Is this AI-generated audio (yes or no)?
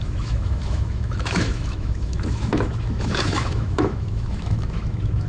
yes